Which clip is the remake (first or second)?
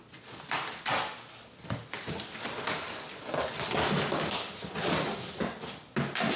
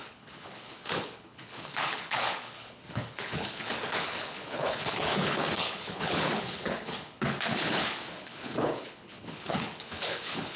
second